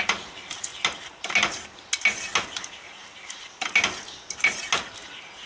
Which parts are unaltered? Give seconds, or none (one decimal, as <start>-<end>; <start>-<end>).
0.0-5.5

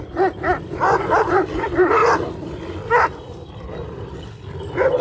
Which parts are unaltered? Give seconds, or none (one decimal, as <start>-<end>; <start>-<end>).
0.0-5.0

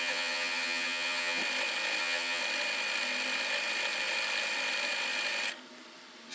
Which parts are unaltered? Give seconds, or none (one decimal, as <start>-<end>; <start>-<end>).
1.4-2.0; 2.4-6.3

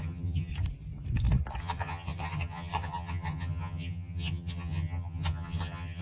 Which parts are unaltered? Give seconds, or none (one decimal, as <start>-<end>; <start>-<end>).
0.5-1.6

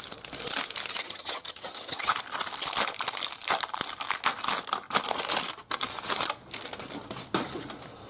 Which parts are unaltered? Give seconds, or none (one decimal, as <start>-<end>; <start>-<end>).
0.0-1.0; 2.1-8.1